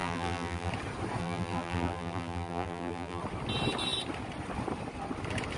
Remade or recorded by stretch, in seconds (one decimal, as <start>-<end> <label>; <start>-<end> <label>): 0.0-0.7 remade; 0.7-1.2 recorded; 1.2-3.2 remade; 3.2-5.6 recorded